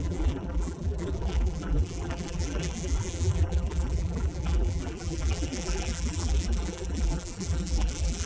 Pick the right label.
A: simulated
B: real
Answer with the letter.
A